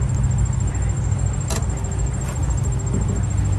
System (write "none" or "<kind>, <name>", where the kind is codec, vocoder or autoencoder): none